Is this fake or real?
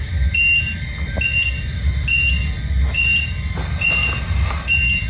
real